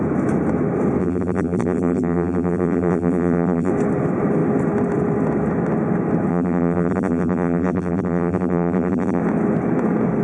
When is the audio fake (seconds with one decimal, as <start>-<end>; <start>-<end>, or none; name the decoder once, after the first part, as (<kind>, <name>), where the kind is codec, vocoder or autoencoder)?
1.0-3.7 (vocoder, BigVGAN v2); 6.3-9.2